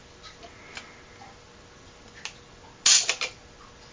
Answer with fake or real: real